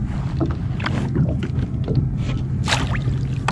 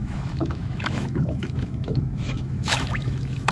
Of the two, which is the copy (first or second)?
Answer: second